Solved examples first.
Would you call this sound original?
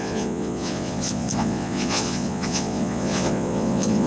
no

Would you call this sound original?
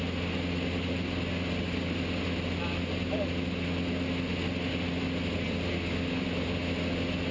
yes